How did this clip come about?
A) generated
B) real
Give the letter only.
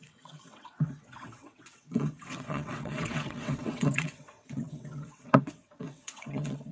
A